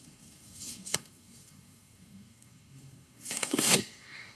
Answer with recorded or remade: remade